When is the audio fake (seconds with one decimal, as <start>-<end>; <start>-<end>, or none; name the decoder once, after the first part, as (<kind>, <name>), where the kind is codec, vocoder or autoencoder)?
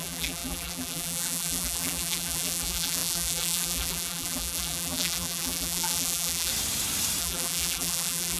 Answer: 0.0-6.5 (vocoder, BigVGAN v2); 7.2-8.4